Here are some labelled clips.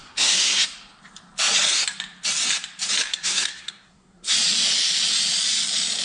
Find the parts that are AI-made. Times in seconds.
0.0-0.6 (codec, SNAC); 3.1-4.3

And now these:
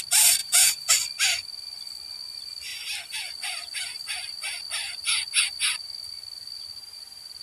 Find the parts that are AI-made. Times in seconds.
0.4-0.9 (vocoder, Vocos)

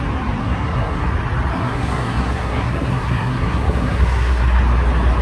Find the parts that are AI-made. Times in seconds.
0.4-1.1 (codec, SNAC); 1.5-4.6

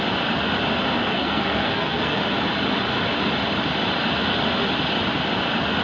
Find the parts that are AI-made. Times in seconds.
1.0-2.2 (codec, SNAC)